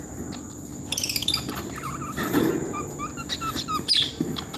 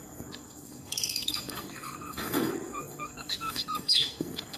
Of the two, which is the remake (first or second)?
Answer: second